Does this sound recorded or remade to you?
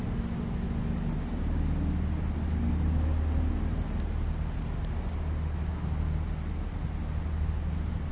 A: recorded